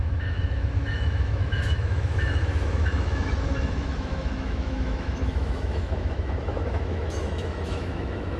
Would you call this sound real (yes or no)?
no